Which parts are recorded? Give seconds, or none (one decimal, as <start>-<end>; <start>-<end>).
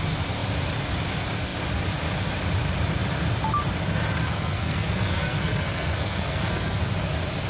0.0-4.2; 6.8-7.5